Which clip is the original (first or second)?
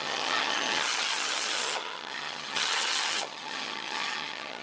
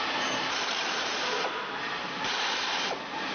second